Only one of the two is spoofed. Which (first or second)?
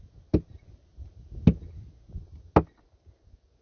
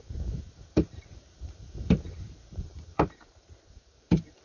second